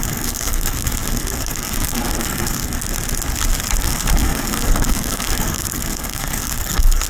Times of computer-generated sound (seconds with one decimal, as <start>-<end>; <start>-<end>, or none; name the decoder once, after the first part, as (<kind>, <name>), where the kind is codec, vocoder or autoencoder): 0.0-2.9 (codec, SNAC); 3.8-7.1